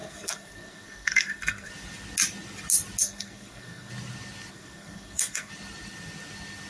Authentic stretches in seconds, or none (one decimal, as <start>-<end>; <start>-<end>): 1.7-3.0; 3.9-4.5; 5.5-6.7